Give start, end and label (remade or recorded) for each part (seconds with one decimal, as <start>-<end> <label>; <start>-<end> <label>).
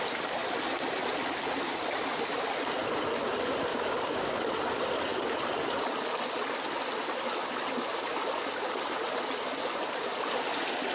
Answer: 0.0-3.7 recorded; 3.7-4.4 remade; 4.4-10.9 recorded